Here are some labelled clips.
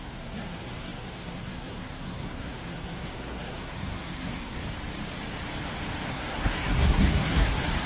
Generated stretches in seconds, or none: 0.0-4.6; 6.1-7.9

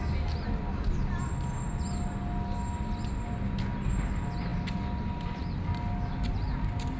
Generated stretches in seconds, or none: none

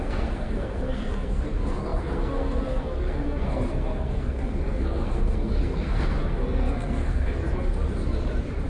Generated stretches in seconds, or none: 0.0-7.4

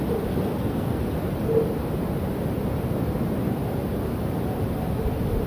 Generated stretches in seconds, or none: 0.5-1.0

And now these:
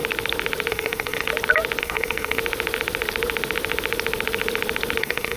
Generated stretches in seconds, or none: 0.7-1.3; 1.8-2.4; 5.0-5.4